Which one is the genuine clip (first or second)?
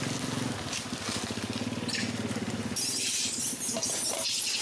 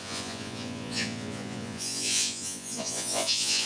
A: first